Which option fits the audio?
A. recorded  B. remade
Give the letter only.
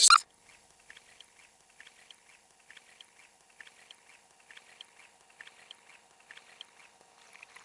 A